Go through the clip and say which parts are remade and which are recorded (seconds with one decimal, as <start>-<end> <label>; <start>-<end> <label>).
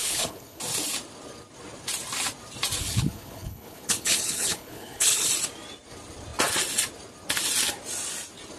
0.0-0.6 remade; 0.6-2.8 recorded; 2.8-5.3 remade; 5.3-8.6 recorded